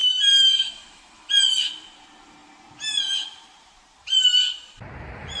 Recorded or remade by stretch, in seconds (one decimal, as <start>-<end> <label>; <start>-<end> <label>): 0.0-1.3 remade; 1.3-5.4 recorded